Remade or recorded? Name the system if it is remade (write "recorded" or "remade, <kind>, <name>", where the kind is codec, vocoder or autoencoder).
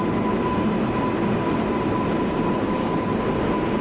recorded